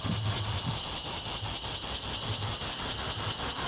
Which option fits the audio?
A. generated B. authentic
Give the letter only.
B